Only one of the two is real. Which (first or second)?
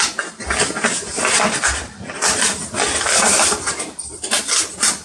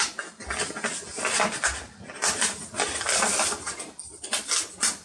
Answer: second